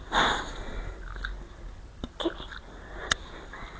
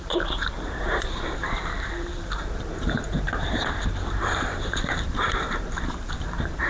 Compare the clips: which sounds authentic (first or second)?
first